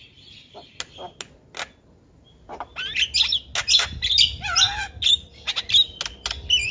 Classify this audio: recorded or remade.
recorded